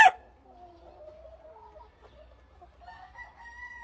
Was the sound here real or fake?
real